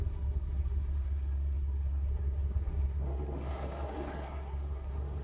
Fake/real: fake